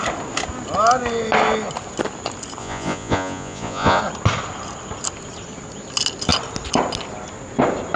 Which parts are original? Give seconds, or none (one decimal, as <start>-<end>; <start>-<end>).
0.0-2.6; 4.0-8.0